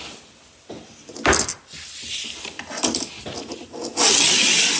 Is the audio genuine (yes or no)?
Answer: yes